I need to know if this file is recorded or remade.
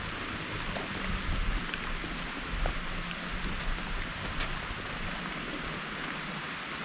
recorded